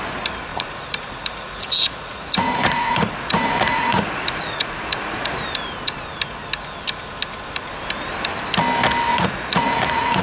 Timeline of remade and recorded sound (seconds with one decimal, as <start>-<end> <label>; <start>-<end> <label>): 0.0-0.5 recorded; 0.5-5.3 remade; 5.3-9.1 recorded; 9.1-10.2 remade